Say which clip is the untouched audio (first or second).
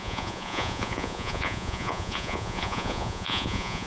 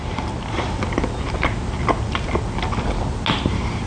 second